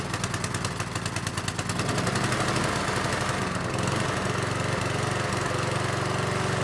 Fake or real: real